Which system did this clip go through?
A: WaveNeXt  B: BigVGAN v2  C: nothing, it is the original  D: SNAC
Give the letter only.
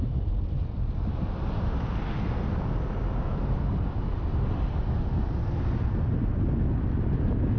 C